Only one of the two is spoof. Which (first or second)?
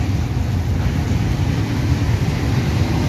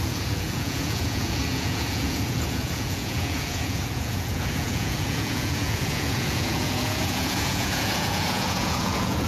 second